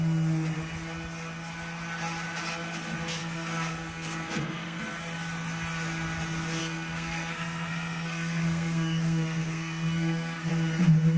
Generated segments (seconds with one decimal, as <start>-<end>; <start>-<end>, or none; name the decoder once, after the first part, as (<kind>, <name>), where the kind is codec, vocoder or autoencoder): 3.2-4.8 (codec, SNAC); 6.6-10.5